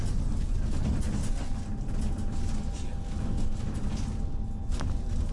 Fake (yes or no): no